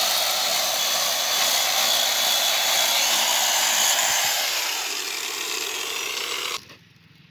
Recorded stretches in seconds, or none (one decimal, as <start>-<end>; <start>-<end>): 0.0-7.3